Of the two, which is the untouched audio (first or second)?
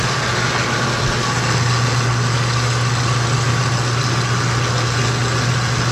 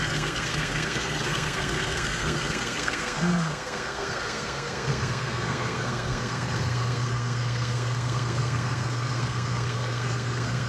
first